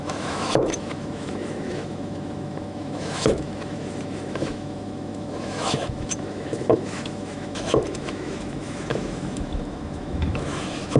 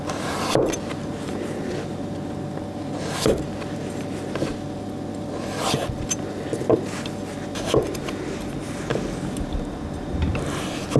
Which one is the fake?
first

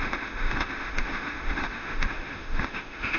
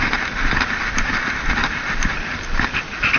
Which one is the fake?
first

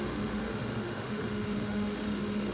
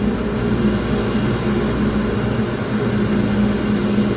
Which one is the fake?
first